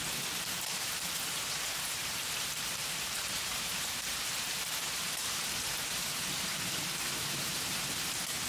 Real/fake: fake